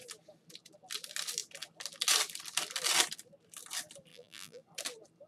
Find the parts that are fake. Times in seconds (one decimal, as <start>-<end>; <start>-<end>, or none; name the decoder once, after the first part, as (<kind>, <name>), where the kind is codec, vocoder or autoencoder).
4.1-4.6 (vocoder, BigVGAN v2)